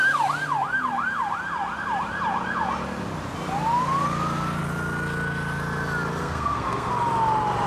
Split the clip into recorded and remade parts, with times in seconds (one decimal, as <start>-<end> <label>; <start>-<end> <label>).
0.0-6.2 recorded; 6.2-6.9 remade; 6.9-7.7 recorded